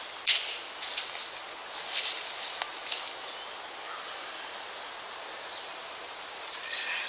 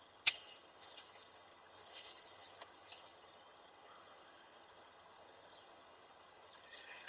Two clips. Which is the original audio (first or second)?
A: first